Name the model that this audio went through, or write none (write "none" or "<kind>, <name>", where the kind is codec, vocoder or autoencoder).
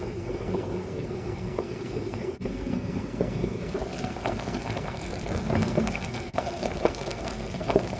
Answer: codec, SNAC